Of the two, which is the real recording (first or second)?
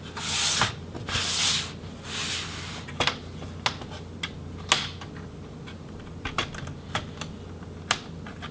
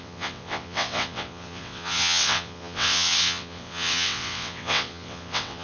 first